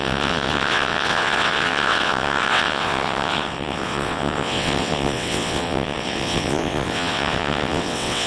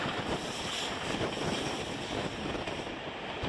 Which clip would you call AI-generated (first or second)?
first